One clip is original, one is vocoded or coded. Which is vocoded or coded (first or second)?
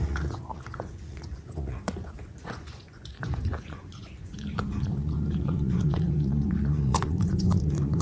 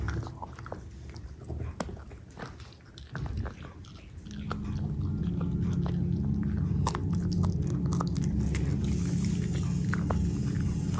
first